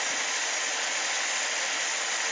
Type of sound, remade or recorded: recorded